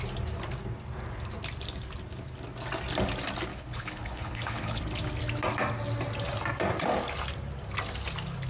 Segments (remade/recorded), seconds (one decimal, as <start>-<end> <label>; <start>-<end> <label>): 0.0-3.5 recorded; 3.5-4.8 remade; 4.8-8.5 recorded